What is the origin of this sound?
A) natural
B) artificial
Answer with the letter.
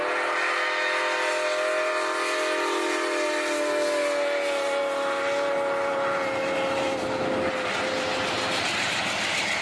A